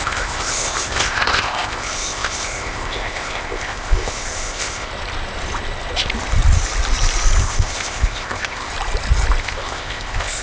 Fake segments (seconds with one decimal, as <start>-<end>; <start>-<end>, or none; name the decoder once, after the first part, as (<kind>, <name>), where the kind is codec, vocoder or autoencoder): 0.0-4.9 (codec, ZipCodec); 7.4-8.7; 9.4-10.4